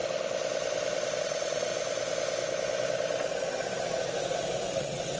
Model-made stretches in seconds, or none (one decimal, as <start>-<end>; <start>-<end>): 1.2-1.7; 4.8-5.2